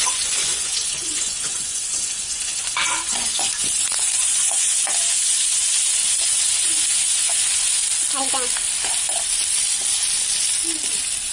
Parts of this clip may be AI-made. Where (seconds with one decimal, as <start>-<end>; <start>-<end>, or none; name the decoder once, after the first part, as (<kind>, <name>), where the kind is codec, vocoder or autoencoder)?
0.0-7.8 (vocoder, Vocos)